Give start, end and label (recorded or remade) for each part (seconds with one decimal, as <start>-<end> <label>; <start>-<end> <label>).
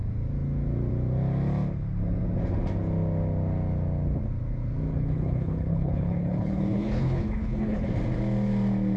0.0-4.9 recorded; 4.9-7.9 remade; 7.9-9.0 recorded